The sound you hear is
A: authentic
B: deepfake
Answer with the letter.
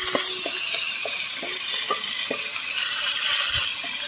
A